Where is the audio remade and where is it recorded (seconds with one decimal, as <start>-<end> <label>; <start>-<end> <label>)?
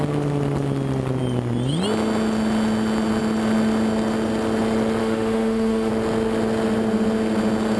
0.0-5.0 recorded; 5.0-5.9 remade; 5.9-7.8 recorded